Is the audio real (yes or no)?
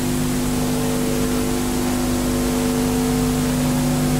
yes